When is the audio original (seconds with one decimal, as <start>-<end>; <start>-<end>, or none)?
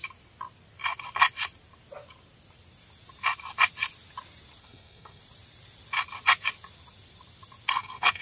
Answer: 0.0-4.6; 5.2-7.7